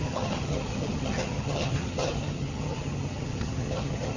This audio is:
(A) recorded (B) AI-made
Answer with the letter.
B